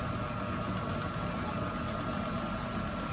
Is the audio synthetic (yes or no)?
no